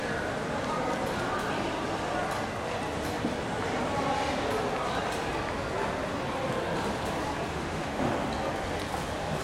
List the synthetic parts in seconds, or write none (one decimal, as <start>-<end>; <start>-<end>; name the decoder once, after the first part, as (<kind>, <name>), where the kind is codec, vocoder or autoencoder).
7.5-8.0 (autoencoder, DAC-VAE)